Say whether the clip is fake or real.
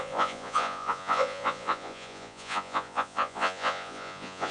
fake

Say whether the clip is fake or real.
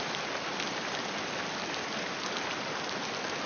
real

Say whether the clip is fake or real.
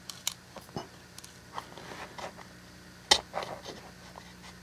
real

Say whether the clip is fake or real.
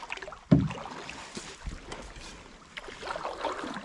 real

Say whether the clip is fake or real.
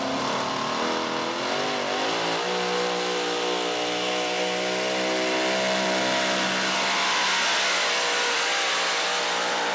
real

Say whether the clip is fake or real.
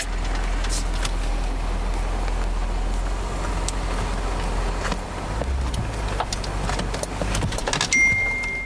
real